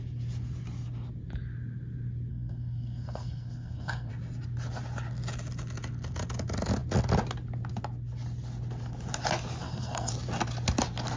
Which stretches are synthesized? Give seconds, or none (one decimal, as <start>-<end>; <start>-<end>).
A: 2.3-4.1; 9.6-10.1